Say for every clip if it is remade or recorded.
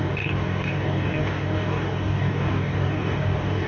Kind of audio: remade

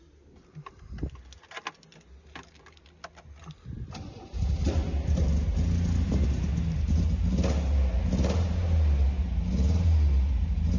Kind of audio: recorded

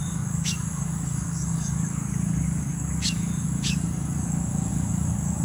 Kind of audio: remade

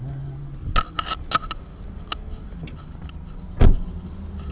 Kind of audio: recorded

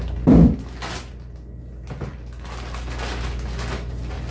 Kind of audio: recorded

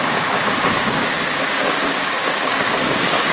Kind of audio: remade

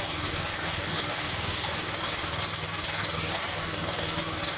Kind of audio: remade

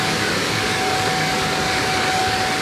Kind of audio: remade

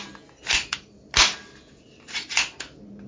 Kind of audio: recorded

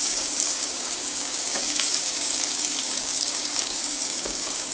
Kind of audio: remade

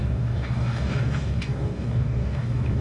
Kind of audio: remade